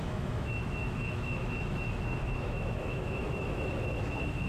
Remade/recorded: remade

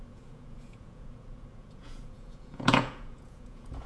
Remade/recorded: remade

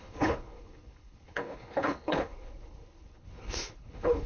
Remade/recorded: remade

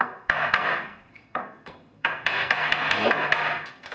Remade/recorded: remade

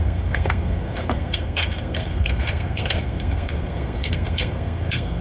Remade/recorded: remade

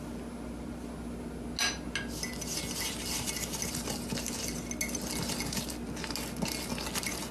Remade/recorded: recorded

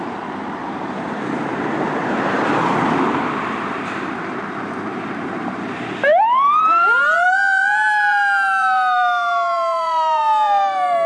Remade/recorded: remade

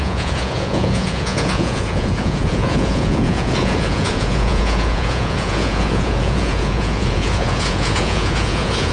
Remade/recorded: remade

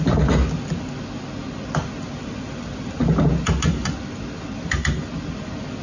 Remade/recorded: recorded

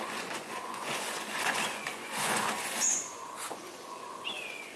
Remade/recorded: remade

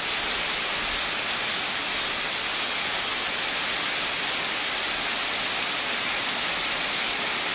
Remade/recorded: recorded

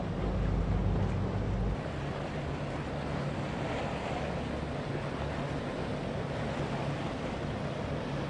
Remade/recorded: recorded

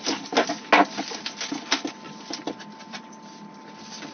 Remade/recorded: recorded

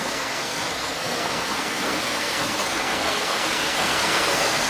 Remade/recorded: remade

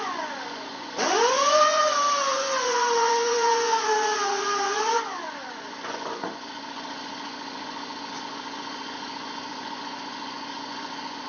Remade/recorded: remade